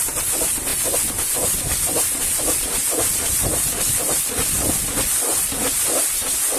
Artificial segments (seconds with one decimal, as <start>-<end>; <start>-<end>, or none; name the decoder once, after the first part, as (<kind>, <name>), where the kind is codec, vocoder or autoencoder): 0.7-4.7 (vocoder, BigVGAN v2)